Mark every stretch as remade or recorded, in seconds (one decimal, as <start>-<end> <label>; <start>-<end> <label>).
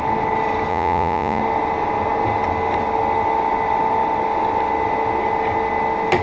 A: 0.0-0.7 recorded; 0.7-1.4 remade; 1.4-6.2 recorded